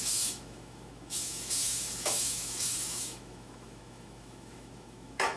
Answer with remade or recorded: remade